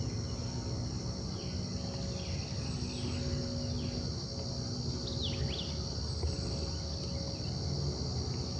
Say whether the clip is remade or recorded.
recorded